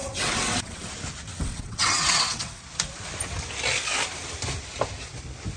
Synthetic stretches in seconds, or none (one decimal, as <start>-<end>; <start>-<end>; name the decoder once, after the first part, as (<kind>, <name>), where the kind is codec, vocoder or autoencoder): 0.0-0.9 (vocoder, WaveNeXt); 1.3-2.6